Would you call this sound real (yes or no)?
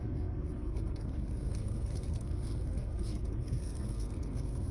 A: no